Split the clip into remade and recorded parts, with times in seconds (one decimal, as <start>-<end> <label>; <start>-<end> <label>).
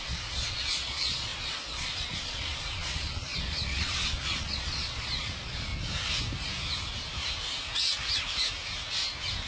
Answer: 0.0-5.7 remade; 5.7-9.5 recorded